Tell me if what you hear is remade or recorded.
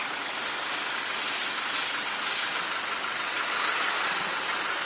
recorded